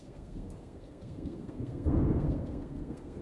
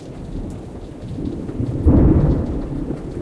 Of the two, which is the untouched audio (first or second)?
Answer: second